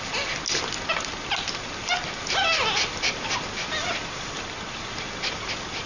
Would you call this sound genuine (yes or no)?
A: yes